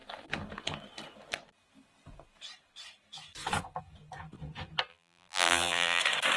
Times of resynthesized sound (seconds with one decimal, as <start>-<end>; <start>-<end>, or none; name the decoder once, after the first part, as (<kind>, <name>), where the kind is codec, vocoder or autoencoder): 4.9-6.0 (vocoder, BigVGAN v2)